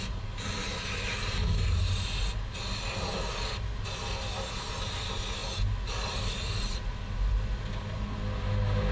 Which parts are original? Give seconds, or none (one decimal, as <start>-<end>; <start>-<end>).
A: 0.0-8.9